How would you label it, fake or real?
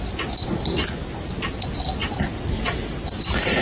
real